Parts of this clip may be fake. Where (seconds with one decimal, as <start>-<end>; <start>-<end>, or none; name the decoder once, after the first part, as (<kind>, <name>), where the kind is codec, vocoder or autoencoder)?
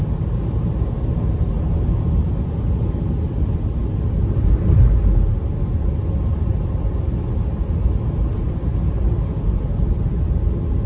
none